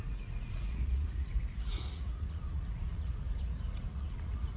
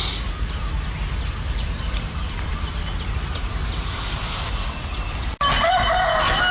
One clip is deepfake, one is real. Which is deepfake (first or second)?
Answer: first